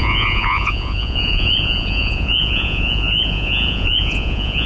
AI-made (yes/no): yes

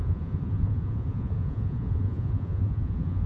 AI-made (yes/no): yes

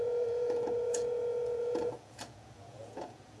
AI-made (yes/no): yes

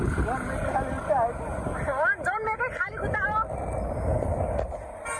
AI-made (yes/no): no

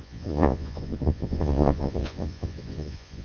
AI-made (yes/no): yes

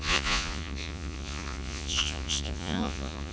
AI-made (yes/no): yes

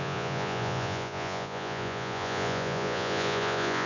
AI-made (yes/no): yes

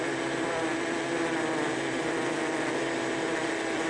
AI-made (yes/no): no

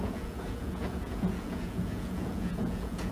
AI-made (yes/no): yes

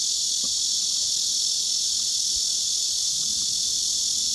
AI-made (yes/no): no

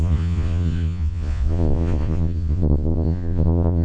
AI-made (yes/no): yes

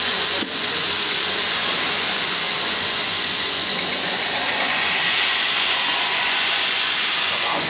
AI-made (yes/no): yes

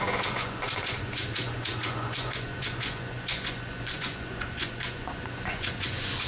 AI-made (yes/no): yes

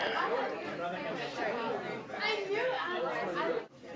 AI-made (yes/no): no